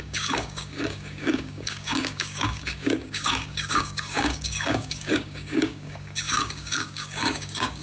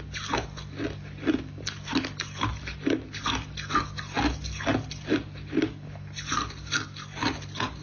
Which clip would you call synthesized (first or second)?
first